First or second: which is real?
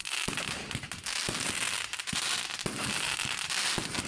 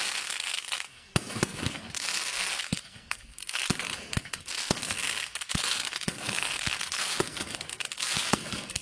first